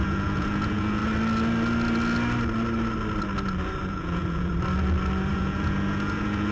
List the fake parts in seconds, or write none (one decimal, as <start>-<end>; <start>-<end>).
0.0-1.0; 3.9-4.5; 5.3-6.5